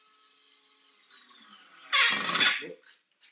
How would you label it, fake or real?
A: real